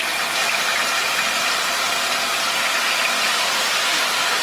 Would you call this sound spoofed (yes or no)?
no